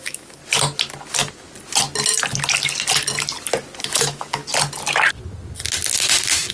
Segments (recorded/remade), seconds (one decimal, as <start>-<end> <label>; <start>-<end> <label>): 0.0-0.4 remade; 0.4-3.8 recorded; 3.8-4.4 remade; 4.4-6.5 recorded